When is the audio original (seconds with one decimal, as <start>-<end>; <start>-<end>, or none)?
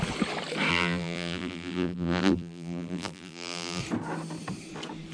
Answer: 0.0-0.7; 3.8-5.1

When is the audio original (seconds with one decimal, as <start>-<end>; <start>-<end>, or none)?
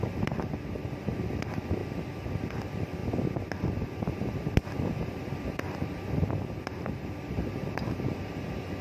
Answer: 1.8-2.5; 3.0-7.3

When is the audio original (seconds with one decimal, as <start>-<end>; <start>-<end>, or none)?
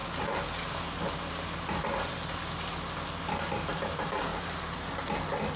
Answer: 0.0-4.3; 5.0-5.6